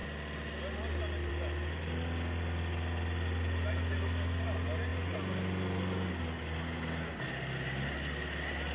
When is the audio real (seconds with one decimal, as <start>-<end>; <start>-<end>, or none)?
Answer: 0.0-8.7

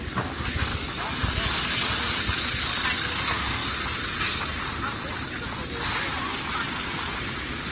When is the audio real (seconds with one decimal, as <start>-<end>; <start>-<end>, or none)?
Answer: 0.0-7.7

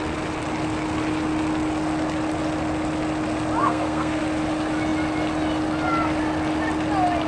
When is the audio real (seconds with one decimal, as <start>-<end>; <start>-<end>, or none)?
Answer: 0.0-3.6; 4.2-7.3

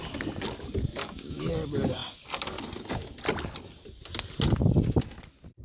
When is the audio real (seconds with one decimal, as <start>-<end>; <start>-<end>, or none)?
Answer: 0.0-0.9; 1.5-5.6

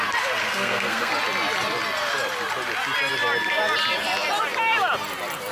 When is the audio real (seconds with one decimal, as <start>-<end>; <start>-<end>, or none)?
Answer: 0.0-0.4; 1.1-5.5